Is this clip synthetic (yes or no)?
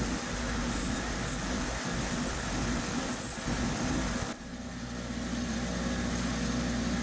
no